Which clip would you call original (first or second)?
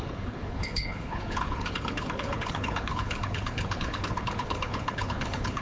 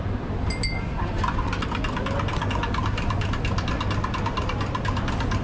second